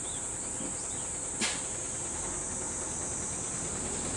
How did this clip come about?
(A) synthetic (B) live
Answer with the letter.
B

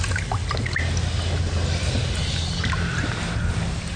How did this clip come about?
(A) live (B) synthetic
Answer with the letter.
A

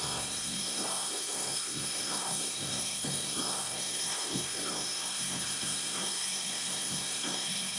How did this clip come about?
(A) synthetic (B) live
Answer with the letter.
A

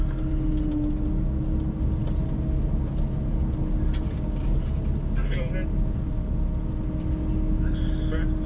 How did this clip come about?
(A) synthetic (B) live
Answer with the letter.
B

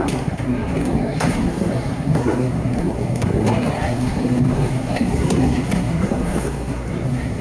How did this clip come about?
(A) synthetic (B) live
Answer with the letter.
A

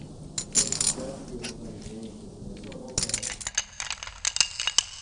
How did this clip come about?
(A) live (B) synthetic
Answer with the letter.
A